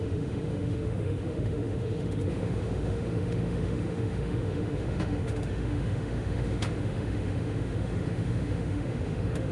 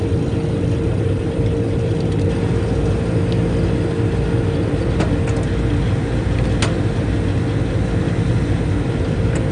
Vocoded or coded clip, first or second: first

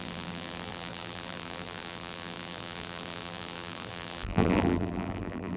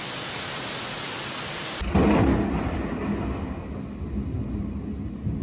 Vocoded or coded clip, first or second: first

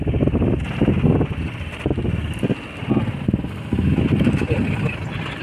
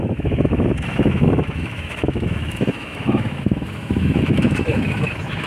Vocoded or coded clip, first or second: second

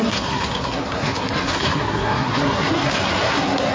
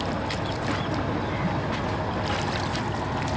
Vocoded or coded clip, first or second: first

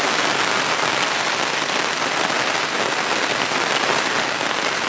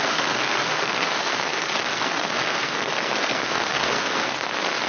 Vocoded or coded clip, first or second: second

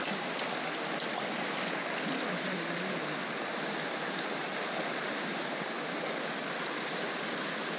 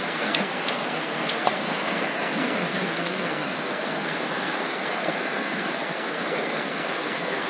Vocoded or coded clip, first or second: second